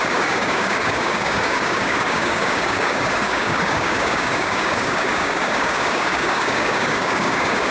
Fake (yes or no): yes